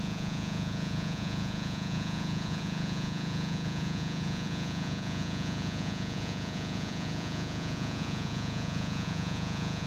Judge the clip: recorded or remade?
remade